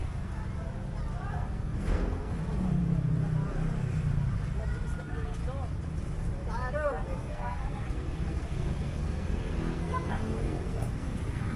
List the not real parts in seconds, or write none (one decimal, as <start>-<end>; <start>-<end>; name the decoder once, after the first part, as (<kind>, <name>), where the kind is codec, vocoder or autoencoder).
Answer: 0.0-0.4 (codec, SNAC); 1.3-2.4; 5.0-5.4; 6.7-11.6